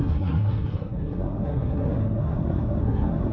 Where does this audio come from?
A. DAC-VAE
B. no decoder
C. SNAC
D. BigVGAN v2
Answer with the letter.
C